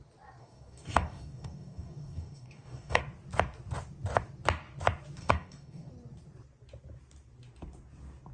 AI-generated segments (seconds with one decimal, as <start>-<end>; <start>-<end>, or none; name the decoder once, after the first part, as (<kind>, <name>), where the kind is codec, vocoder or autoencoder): 0.4-3.0 (codec, DAC); 5.2-5.9

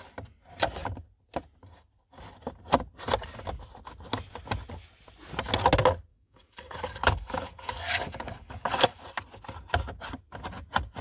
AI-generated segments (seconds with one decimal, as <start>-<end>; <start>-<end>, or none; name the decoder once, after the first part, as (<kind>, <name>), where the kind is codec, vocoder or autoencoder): 6.1-9.0 (codec, DAC)